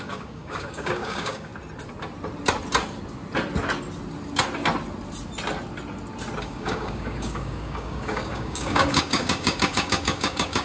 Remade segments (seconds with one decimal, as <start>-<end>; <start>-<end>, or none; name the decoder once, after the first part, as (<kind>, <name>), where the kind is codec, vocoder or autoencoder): 0.0-1.5 (codec, DAC); 6.4-10.6